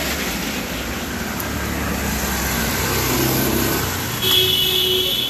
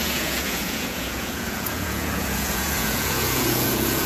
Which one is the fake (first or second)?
second